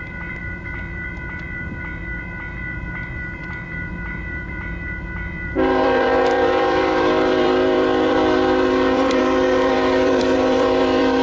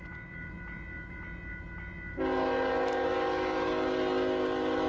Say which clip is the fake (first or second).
first